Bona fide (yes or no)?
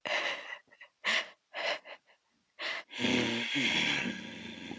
yes